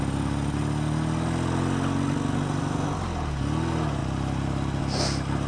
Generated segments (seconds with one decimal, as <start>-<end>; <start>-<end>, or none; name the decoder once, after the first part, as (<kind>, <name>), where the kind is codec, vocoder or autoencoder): none